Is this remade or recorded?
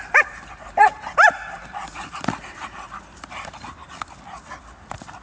remade